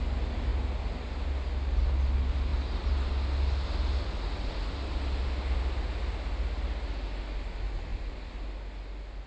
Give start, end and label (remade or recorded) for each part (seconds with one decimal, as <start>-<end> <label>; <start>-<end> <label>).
0.0-9.3 recorded